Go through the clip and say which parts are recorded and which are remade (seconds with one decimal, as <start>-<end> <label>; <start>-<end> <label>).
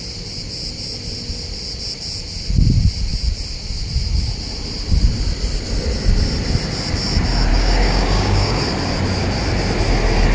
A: 0.0-7.5 recorded; 7.5-8.6 remade; 8.6-10.3 recorded